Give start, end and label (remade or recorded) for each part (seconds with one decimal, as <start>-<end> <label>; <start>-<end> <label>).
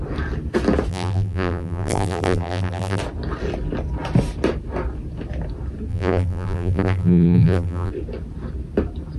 0.0-0.9 recorded; 0.9-3.0 remade; 3.0-5.9 recorded; 5.9-7.9 remade; 7.9-9.2 recorded